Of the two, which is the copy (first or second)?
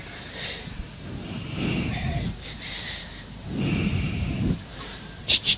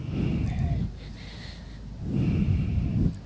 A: first